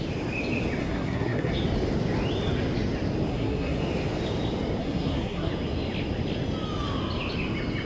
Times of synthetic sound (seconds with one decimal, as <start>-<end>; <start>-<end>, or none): 0.8-1.5; 3.3-3.8; 4.8-5.5